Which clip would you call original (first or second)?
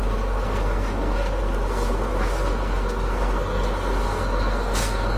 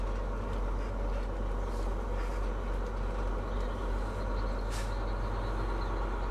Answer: second